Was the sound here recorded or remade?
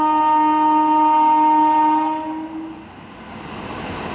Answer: recorded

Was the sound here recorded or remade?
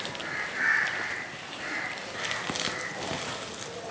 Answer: recorded